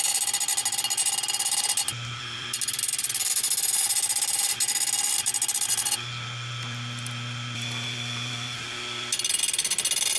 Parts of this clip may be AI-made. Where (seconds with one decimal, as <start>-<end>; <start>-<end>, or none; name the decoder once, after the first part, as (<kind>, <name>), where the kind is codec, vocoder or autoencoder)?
none